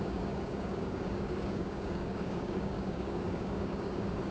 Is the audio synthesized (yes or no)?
yes